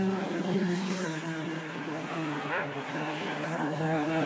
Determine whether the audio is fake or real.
fake